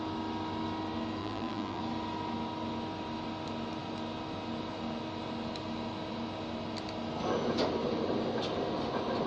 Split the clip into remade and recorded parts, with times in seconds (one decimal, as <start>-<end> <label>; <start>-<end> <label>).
0.0-1.2 recorded; 1.2-1.8 remade; 1.8-9.3 recorded